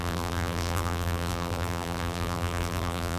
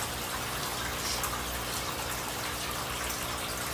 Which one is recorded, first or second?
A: second